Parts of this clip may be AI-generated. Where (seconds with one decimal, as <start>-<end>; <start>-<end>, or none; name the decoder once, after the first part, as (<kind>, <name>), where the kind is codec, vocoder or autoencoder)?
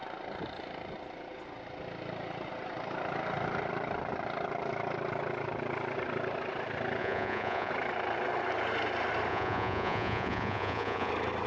7.0-7.7 (vocoder, Vocos); 9.3-11.1